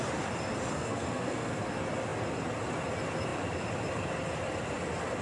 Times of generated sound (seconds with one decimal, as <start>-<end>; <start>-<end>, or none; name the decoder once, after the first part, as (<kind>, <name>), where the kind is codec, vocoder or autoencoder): 0.7-1.6 (codec, SNAC)